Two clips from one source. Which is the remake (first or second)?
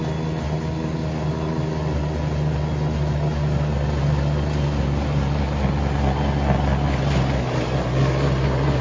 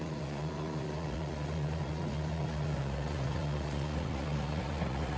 second